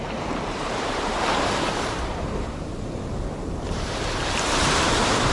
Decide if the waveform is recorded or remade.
remade